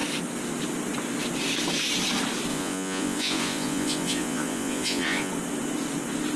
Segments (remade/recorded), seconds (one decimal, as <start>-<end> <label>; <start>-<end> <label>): 0.0-2.5 recorded; 2.5-5.3 remade; 5.3-6.4 recorded